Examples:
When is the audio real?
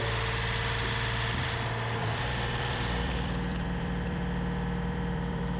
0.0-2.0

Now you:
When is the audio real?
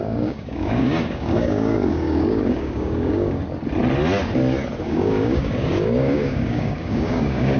3.4-4.8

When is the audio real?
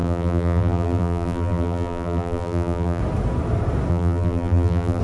3.0-3.9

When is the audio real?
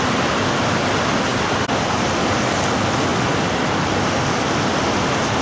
0.0-5.4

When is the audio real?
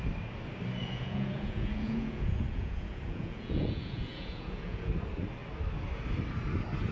0.0-0.8; 4.9-6.9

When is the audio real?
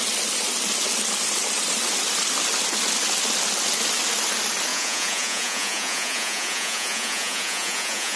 0.0-4.7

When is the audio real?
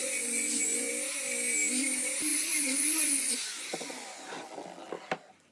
0.9-2.3; 4.3-5.5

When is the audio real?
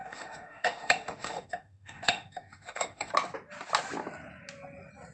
3.1-5.1